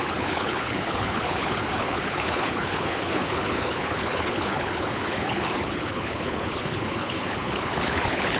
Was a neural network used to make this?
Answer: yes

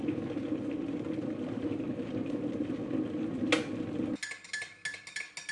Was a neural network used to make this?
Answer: no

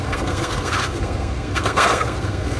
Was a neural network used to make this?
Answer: yes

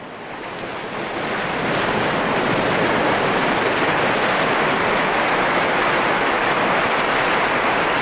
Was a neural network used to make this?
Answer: no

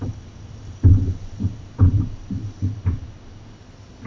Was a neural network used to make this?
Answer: no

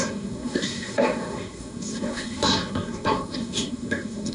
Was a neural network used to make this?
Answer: yes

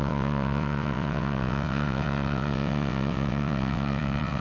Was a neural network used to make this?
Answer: yes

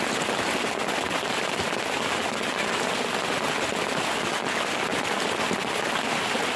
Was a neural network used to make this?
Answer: no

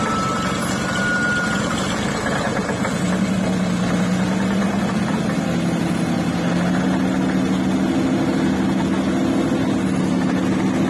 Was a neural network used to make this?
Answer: no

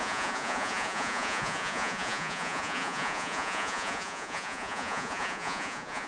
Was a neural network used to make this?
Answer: yes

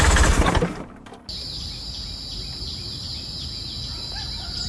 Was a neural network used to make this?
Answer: no